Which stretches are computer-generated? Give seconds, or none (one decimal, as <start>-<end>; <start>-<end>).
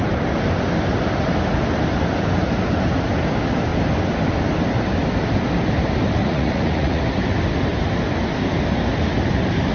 6.2-7.0